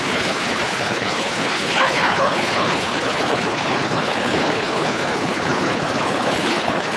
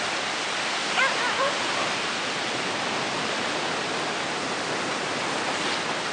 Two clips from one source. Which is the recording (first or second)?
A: second